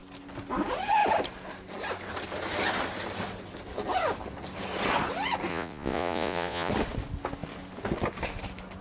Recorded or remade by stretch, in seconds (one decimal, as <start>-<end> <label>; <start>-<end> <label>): 0.0-5.5 recorded; 5.5-6.7 remade; 6.7-8.8 recorded